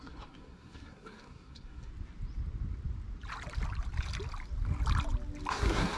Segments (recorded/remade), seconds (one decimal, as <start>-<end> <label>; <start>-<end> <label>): 0.0-1.9 remade; 1.9-5.5 recorded; 5.5-6.0 remade